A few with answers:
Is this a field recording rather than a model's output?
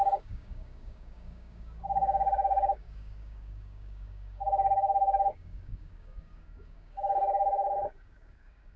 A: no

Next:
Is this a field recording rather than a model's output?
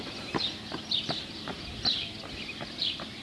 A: yes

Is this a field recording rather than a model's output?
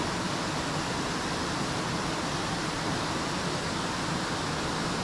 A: yes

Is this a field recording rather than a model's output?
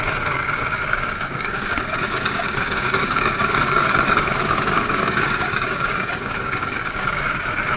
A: no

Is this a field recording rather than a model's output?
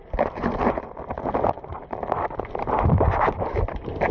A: yes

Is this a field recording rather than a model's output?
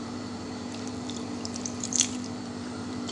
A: no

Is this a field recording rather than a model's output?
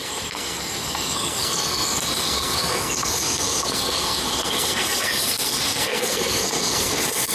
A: no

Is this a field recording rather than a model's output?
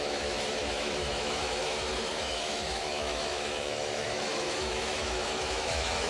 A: no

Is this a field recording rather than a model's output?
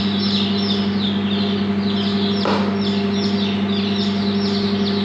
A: yes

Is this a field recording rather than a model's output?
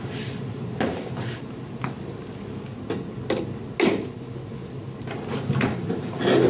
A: yes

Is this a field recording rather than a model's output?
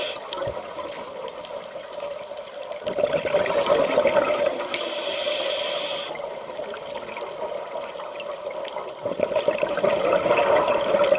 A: yes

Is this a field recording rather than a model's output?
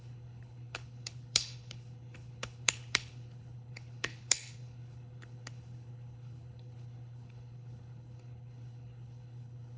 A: no